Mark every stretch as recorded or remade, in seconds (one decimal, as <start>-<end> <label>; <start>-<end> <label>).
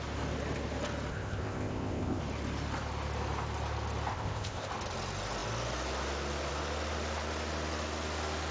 0.0-1.1 recorded; 1.1-2.2 remade; 2.2-4.1 recorded; 4.1-4.7 remade; 4.7-8.5 recorded